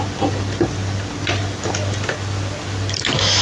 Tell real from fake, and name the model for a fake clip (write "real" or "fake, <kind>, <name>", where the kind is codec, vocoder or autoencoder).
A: real